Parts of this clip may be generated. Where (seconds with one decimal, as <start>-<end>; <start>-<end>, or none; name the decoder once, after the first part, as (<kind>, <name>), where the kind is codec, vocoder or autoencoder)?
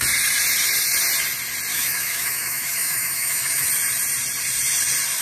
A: 1.7-3.7 (autoencoder, DAC-VAE)